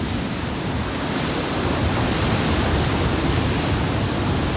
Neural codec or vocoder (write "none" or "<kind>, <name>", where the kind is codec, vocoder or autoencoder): none